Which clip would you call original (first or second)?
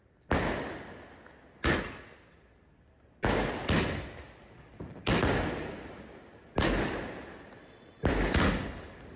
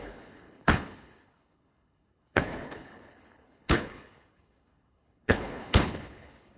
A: first